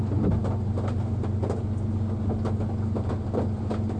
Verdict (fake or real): real